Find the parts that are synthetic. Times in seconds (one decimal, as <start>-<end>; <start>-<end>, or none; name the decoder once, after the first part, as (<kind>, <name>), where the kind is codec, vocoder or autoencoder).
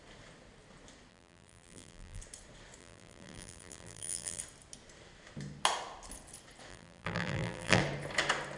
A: 1.1-2.2 (vocoder, BigVGAN v2); 2.8-4.4; 6.7-7.8